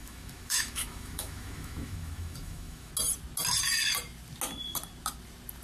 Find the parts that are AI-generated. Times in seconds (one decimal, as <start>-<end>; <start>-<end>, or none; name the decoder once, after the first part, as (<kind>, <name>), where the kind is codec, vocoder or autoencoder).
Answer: 0.0-2.9 (autoencoder, DAC-VAE)